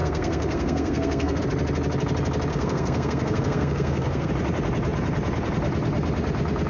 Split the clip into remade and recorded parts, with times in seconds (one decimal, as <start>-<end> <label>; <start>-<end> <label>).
0.0-1.4 remade; 1.4-2.5 recorded; 2.5-4.3 remade; 4.3-6.7 recorded